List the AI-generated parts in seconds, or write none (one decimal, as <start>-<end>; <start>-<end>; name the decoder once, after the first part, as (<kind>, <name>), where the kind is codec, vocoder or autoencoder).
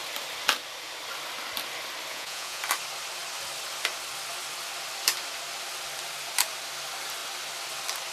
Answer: 2.1-2.6 (vocoder, Vocos)